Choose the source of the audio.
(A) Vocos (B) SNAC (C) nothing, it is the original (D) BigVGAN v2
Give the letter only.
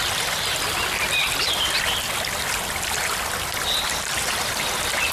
C